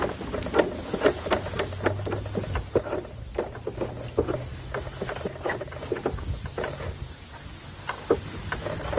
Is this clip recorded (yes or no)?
yes